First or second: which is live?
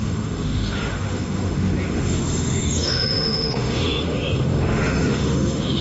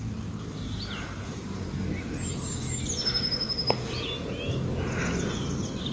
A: second